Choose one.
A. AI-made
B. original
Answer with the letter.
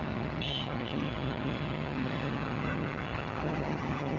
A